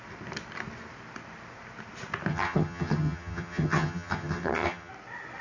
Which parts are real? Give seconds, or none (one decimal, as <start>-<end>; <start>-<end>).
0.0-2.3; 4.9-5.4